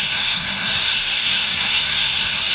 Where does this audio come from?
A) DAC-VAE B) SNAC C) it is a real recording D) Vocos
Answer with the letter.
B